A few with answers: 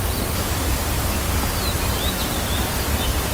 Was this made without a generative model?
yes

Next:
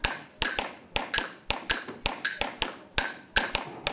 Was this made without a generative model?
yes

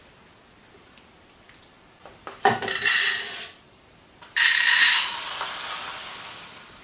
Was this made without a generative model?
no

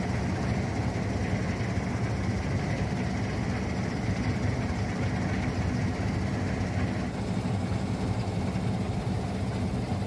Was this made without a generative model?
yes